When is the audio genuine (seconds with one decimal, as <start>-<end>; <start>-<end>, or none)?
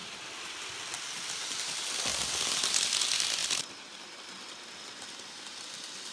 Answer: 0.0-3.4; 4.0-6.1